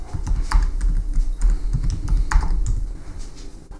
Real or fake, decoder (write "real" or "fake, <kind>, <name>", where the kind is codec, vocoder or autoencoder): real